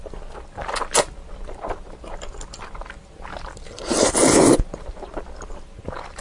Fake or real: real